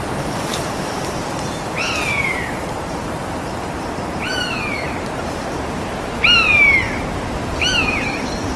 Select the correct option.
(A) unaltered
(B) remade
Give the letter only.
B